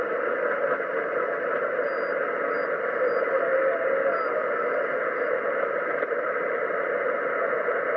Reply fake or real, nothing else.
real